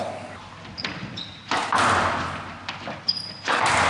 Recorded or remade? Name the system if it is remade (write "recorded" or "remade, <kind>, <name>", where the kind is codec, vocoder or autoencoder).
recorded